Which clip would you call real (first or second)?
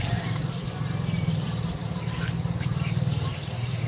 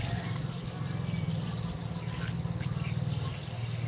second